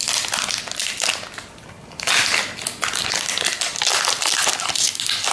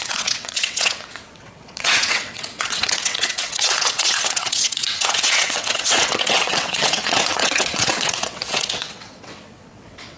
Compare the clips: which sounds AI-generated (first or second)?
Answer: second